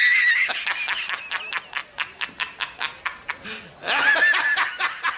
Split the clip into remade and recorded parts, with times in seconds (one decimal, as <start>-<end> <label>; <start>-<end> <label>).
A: 0.0-5.2 recorded